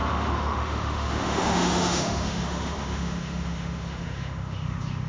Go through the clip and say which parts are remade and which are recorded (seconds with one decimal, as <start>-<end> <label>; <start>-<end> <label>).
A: 0.0-5.1 remade